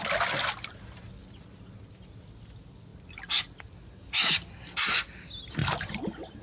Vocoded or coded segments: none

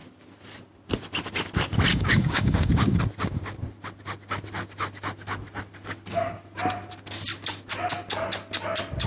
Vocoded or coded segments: 1.9-3.0